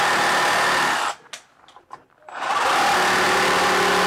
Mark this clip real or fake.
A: real